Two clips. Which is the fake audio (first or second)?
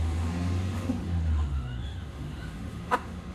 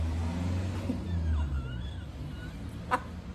first